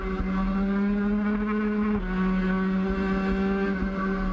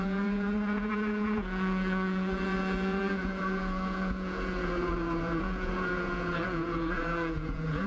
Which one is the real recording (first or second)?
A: first